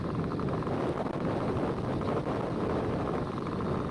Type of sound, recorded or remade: recorded